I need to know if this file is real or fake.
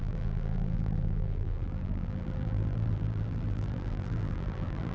fake